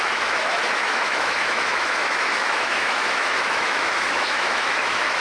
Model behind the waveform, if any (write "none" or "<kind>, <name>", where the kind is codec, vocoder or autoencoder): autoencoder, DAC-VAE